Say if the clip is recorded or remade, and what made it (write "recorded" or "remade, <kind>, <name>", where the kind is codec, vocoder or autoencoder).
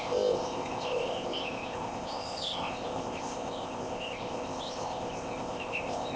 remade, codec, ZipCodec